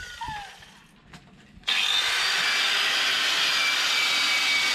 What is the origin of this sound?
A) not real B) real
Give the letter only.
B